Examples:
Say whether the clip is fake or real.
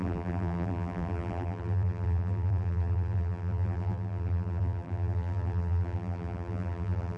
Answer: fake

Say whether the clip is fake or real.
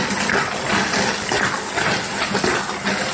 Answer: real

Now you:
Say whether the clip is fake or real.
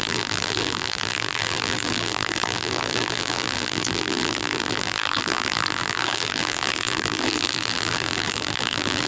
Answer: fake